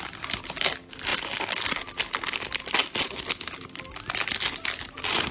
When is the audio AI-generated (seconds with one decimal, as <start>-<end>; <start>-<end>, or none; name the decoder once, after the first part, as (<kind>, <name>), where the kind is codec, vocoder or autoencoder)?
none